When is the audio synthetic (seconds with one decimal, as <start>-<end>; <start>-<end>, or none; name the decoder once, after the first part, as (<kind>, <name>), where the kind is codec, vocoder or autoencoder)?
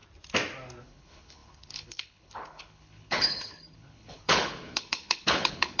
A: 0.8-5.8 (codec, HILCodec)